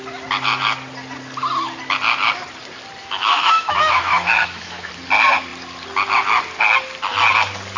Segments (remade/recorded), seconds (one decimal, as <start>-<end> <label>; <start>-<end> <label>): 0.0-3.0 recorded; 3.0-4.9 remade; 4.9-7.8 recorded